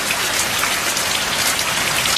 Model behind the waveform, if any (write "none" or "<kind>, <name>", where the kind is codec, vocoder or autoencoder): none